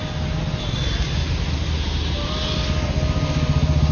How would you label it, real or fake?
real